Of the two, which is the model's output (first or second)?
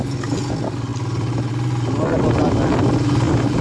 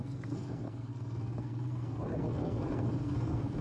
second